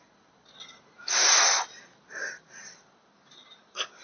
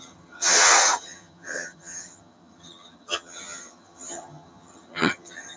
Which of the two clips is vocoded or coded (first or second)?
second